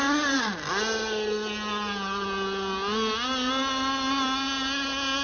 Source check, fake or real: real